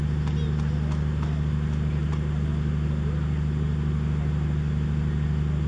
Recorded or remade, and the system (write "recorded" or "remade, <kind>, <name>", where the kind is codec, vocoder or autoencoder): recorded